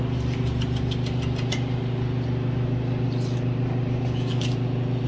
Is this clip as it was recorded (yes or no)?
yes